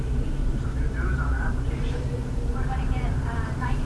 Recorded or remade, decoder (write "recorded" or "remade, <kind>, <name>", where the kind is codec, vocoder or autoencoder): remade, vocoder, BigVGAN v2